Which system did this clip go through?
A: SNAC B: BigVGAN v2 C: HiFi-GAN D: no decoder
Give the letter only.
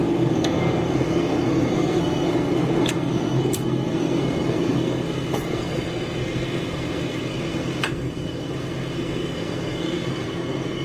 A